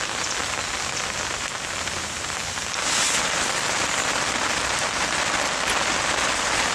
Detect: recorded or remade recorded